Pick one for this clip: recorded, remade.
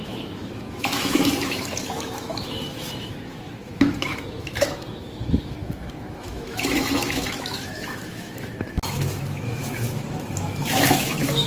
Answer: remade